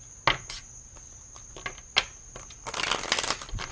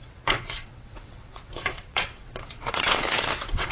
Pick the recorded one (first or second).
first